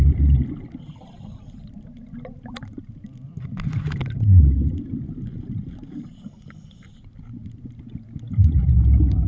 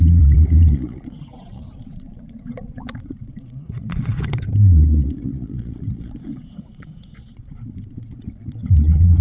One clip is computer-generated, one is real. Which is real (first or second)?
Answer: first